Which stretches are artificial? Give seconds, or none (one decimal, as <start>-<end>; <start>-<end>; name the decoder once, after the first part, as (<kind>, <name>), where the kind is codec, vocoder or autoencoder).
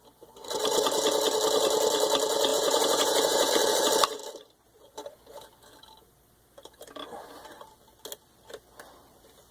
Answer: 2.5-3.5 (vocoder, Vocos)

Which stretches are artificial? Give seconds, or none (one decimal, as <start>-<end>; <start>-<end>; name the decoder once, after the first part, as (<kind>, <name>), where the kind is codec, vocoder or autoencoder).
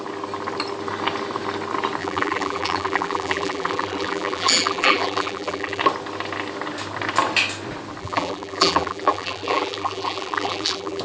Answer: 2.0-5.8 (vocoder, BigVGAN v2); 8.0-11.0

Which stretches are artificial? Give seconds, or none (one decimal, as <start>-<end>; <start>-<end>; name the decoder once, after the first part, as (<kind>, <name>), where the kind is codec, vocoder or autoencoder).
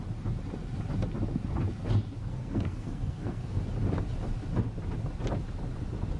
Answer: 2.2-3.6 (codec, SNAC)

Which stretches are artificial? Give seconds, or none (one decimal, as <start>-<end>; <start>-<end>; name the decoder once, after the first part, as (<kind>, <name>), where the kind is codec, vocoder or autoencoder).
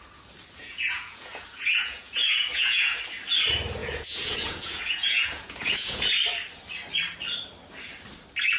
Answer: 0.6-3.0 (vocoder, Vocos); 3.8-6.1